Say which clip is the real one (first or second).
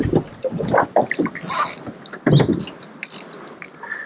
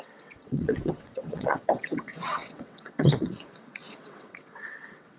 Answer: first